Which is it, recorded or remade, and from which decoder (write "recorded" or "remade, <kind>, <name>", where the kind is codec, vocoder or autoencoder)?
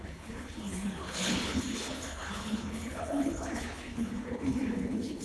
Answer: remade, codec, HILCodec